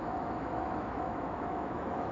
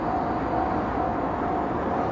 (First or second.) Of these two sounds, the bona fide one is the second